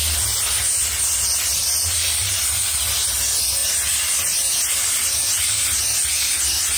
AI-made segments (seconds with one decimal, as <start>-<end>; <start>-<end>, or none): 2.2-2.8